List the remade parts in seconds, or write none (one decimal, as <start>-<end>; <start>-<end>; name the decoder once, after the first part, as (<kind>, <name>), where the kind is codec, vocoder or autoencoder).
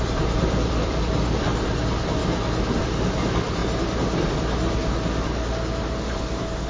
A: 0.0-2.2 (vocoder, BigVGAN v2); 2.8-3.6; 4.3-4.8